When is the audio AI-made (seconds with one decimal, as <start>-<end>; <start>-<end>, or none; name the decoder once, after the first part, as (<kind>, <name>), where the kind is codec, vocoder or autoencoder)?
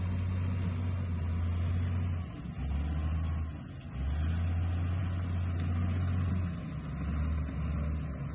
none